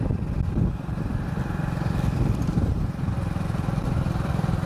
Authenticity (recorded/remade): remade